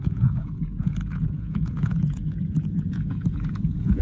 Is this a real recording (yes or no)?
no